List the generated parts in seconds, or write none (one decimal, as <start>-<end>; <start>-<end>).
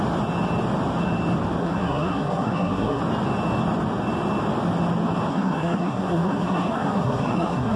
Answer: 1.6-3.0; 5.3-7.8